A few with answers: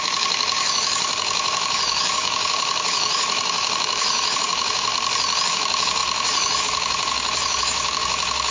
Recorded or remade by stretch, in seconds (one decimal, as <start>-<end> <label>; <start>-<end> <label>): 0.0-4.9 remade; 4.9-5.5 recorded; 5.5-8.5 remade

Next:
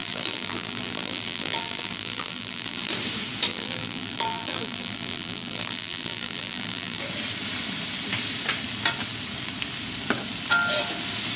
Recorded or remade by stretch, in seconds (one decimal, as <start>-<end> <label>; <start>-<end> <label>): 0.0-2.9 remade; 2.9-3.5 recorded; 3.5-7.0 remade; 7.0-11.4 recorded

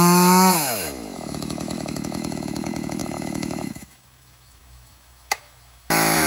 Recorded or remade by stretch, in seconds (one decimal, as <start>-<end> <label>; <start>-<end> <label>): 0.0-6.3 remade